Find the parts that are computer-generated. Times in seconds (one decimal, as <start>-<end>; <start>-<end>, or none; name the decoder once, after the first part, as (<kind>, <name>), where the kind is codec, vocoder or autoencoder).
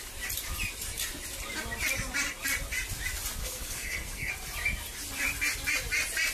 3.4-4.3 (codec, SNAC)